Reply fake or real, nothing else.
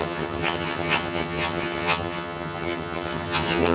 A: fake